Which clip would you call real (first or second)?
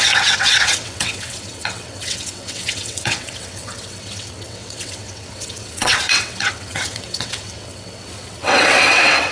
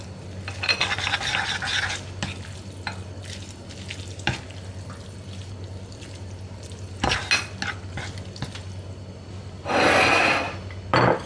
second